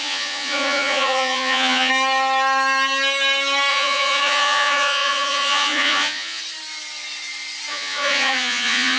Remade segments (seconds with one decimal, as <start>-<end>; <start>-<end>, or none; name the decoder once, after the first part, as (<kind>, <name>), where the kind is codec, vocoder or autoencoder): 0.0-1.9 (vocoder, Vocos); 3.7-6.4; 7.7-9.0